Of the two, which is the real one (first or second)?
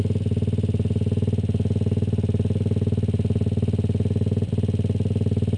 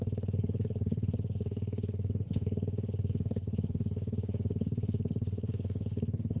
first